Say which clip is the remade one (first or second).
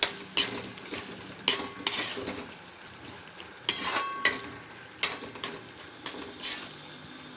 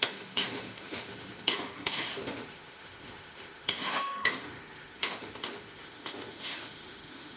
second